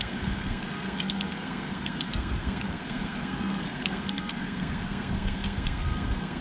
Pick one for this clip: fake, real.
fake